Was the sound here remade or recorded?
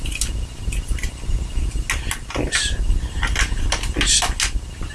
recorded